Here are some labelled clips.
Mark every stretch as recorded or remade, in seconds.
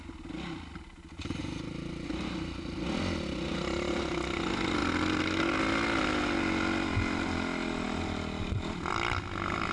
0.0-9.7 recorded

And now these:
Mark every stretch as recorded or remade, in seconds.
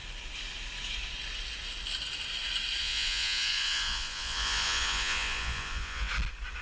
0.0-2.8 recorded; 2.8-6.1 remade; 6.1-6.6 recorded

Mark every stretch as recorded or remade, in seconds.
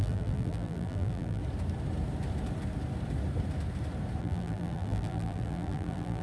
0.0-1.4 remade; 1.4-4.2 recorded; 4.2-6.2 remade